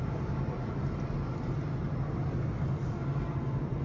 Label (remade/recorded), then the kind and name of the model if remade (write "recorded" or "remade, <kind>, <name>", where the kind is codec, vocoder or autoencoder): remade, vocoder, BigVGAN v2